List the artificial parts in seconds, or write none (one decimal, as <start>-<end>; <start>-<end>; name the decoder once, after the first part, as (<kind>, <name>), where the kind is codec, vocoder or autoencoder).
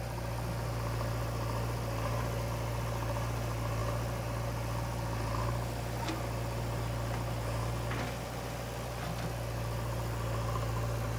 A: none